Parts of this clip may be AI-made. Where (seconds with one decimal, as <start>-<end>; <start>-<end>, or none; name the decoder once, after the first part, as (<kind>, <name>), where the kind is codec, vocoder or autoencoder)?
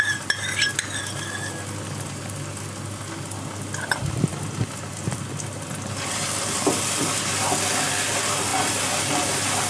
none